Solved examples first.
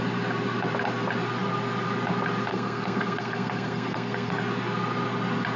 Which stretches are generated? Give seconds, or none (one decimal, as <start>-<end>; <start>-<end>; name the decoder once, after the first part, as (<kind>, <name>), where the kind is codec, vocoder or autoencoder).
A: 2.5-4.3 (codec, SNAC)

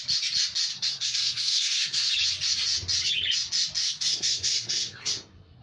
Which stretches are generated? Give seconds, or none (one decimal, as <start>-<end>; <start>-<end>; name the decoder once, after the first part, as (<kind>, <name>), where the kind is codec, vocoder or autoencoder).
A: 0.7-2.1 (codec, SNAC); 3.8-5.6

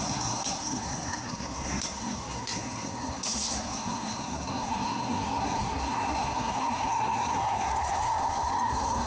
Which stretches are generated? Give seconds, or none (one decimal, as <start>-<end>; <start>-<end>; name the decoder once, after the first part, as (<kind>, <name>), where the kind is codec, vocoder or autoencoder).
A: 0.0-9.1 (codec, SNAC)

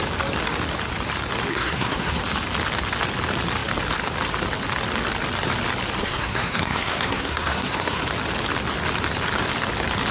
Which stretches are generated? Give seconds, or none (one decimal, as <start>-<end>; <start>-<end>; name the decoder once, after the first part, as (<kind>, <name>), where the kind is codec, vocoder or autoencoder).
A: 1.5-2.2 (codec, SNAC); 6.0-8.0

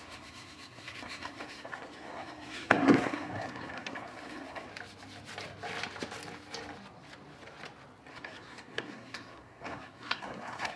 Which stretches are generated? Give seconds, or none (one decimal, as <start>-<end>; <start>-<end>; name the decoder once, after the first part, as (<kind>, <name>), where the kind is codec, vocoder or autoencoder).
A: 0.0-4.7 (codec, SNAC); 8.1-10.8